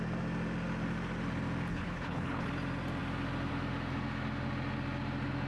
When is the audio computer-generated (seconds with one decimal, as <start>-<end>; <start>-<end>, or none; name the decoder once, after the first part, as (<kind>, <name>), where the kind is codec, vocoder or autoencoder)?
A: 1.7-2.5 (codec, HILCodec)